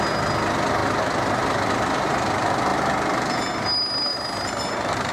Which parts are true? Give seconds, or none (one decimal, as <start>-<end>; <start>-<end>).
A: 0.0-4.1